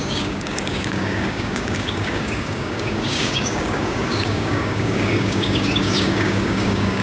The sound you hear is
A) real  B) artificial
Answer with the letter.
B